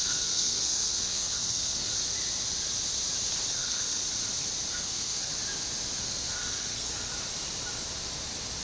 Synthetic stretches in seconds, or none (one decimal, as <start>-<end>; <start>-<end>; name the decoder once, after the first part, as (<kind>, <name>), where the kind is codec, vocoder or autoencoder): 0.0-1.9 (codec, SNAC); 3.5-4.0; 4.7-5.3; 6.0-7.1